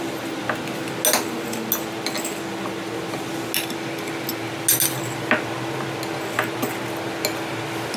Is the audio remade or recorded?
recorded